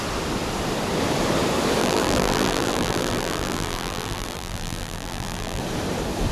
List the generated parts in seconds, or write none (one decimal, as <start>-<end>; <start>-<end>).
1.8-5.6